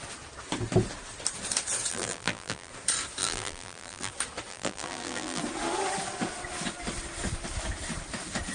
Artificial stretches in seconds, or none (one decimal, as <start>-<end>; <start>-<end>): 1.9-2.7; 3.2-4.1; 4.5-5.4